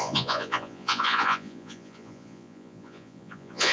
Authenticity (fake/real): fake